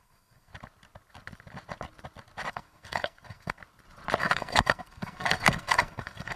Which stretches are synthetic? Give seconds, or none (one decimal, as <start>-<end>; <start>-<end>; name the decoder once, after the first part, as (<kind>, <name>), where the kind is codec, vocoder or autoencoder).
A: 0.0-0.5 (codec, SNAC); 2.5-3.6; 4.2-6.4